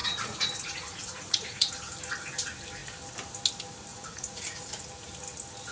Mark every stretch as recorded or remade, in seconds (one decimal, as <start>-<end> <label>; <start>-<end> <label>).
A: 0.0-1.7 remade; 1.7-3.9 recorded; 3.9-4.7 remade; 4.7-5.7 recorded